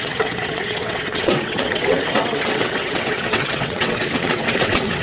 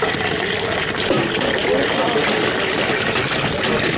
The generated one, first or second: first